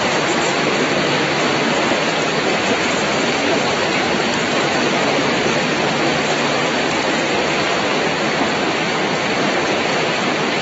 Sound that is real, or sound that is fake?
real